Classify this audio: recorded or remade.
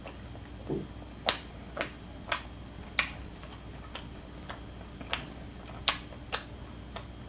recorded